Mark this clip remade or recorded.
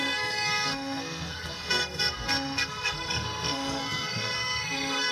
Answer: remade